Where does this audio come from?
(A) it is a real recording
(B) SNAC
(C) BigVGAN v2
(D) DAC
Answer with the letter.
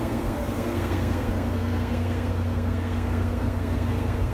B